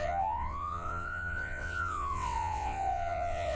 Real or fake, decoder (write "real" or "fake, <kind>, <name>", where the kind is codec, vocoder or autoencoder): fake, vocoder, WaveNeXt